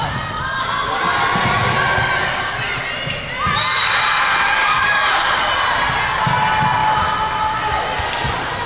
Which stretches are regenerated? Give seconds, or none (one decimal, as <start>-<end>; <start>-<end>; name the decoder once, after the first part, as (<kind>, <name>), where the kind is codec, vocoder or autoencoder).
4.6-5.5 (codec, DAC)